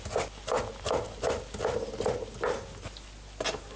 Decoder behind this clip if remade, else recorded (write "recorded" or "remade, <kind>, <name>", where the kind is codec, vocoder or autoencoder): recorded